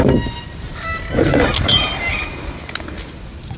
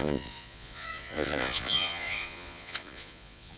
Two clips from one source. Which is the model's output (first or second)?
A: second